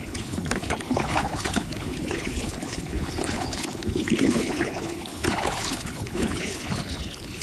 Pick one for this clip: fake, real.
fake